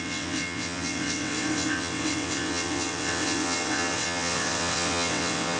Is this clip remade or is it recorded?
remade